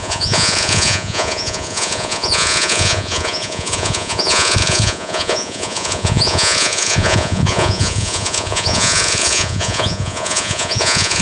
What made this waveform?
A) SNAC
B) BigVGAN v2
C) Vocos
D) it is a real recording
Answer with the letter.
C